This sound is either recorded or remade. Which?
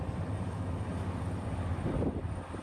remade